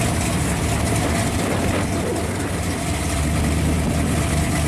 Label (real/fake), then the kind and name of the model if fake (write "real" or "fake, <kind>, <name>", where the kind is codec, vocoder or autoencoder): real